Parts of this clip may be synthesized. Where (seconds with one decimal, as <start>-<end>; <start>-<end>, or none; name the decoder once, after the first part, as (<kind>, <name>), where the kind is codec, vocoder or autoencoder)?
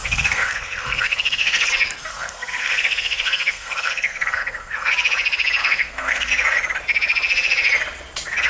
0.0-1.7 (codec, SNAC); 2.1-4.9; 5.6-6.3